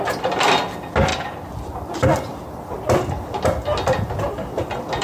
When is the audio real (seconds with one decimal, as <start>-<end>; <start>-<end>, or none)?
0.0-2.3; 3.4-5.0